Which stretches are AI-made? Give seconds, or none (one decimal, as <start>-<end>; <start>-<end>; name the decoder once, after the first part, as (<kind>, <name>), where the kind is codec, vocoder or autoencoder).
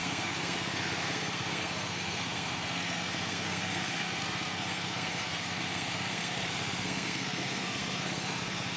0.0-8.8 (codec, SNAC)